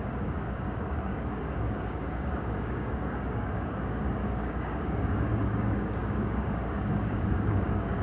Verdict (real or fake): fake